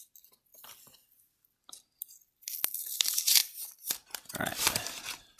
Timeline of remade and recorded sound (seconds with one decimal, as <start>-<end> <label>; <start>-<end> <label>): 0.0-0.5 remade; 0.5-2.8 recorded; 2.8-5.4 remade